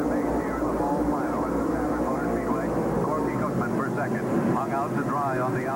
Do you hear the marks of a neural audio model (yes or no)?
no